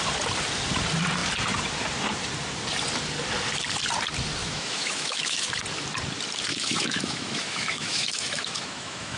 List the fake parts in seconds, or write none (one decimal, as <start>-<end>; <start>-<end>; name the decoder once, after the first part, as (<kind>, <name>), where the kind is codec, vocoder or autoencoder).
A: 4.4-5.5 (autoencoder, DAC-VAE); 6.5-9.2